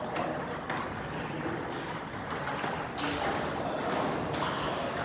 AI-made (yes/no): no